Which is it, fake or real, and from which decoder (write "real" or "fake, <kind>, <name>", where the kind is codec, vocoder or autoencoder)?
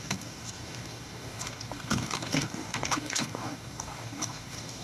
fake, codec, DAC